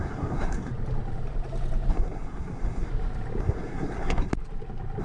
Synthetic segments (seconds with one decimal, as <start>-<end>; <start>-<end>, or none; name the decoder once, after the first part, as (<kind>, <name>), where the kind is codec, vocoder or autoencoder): 0.0-0.7 (codec, SNAC); 1.9-2.9; 3.4-4.3